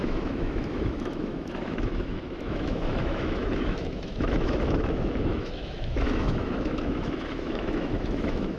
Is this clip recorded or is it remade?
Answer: remade